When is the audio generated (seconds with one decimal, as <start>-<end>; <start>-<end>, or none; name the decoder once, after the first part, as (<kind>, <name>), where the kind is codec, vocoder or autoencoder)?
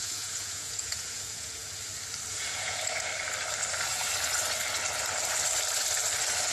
0.0-1.6 (vocoder, Vocos); 2.3-3.1